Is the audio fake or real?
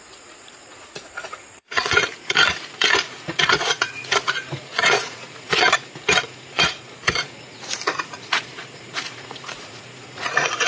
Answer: fake